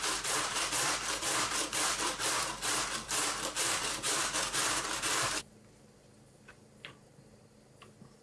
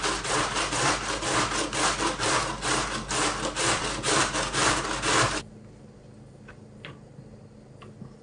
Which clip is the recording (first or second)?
second